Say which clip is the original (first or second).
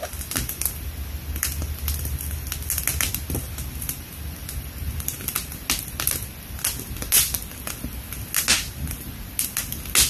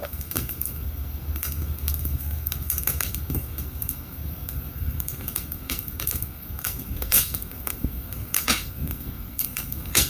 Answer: first